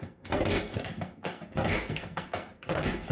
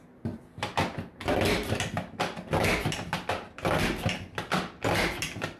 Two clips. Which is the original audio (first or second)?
second